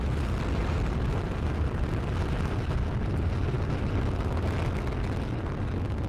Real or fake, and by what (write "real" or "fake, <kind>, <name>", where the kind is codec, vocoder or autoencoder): real